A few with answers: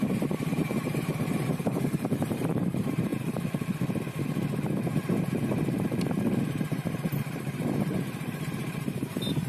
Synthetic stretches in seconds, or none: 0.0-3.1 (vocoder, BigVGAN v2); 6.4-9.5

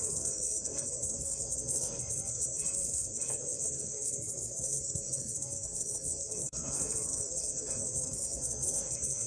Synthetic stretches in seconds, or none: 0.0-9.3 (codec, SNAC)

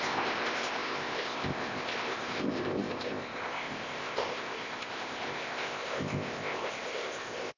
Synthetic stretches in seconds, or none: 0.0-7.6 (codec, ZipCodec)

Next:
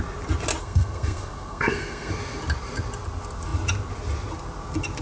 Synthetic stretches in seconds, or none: 0.6-2.1 (codec, SNAC)